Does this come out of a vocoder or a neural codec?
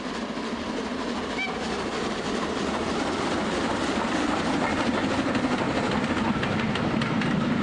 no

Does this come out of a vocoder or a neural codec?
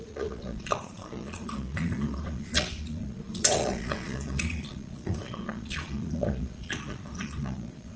yes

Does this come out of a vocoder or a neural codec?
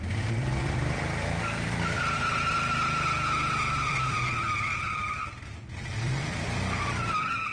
yes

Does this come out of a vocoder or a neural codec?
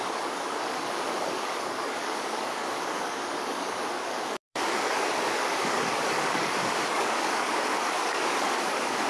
yes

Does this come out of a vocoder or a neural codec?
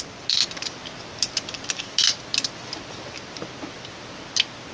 no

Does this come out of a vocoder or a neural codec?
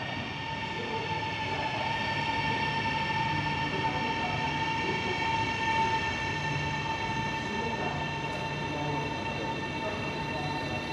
no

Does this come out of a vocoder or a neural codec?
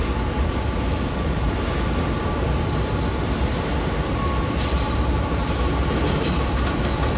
no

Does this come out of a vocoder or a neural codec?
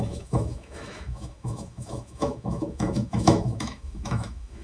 yes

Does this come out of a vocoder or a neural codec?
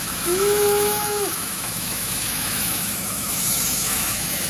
yes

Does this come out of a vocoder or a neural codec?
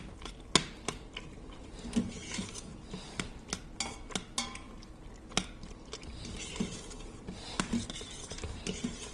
no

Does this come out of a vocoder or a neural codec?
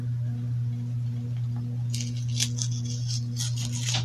no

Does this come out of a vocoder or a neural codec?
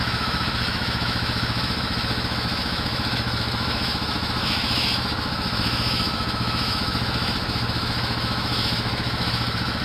yes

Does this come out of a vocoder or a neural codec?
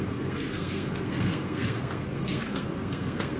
yes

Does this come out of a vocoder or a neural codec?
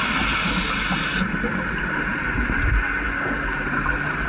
no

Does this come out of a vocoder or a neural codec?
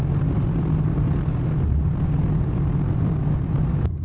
no